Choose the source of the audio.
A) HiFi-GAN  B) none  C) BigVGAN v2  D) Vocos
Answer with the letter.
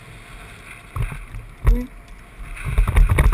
B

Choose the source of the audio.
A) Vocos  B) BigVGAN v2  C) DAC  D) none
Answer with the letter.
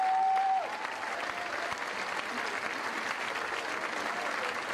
D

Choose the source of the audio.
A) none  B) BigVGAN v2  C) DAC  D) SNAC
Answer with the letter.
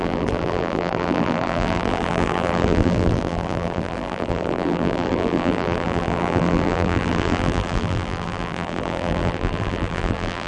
B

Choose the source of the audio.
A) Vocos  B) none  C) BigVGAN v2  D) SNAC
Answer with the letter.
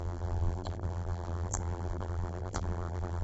C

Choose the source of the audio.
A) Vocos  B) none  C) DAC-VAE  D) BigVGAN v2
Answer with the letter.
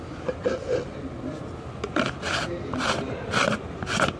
B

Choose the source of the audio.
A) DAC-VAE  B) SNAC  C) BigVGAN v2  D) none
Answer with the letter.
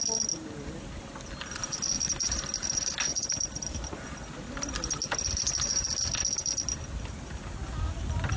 D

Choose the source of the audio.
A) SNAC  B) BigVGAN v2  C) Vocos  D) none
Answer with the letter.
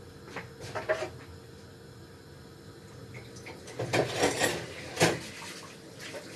D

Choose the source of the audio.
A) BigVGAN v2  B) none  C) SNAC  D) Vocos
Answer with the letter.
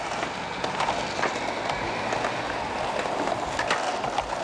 B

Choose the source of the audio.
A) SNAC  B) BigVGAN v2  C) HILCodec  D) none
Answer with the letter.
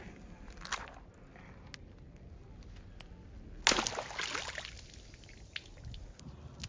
D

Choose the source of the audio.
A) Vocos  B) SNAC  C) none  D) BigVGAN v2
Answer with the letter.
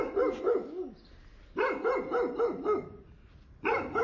C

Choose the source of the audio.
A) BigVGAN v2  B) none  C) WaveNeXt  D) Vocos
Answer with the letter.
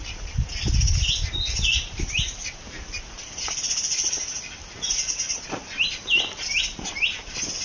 B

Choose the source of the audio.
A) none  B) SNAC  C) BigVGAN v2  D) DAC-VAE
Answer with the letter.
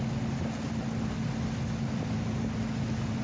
A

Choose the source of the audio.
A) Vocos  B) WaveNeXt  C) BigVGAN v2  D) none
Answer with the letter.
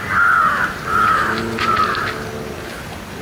D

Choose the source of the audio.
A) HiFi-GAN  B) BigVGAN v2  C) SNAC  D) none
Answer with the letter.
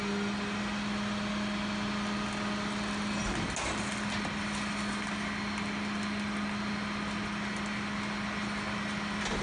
D